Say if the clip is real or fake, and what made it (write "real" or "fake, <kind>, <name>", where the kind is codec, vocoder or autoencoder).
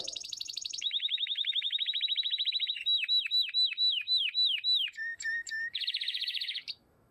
fake, autoencoder, DAC-VAE